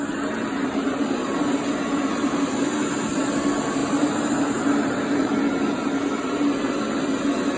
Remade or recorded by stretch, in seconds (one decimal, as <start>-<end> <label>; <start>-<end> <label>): 0.0-0.4 recorded; 0.4-3.2 remade; 3.2-3.8 recorded; 3.8-5.4 remade; 5.4-7.6 recorded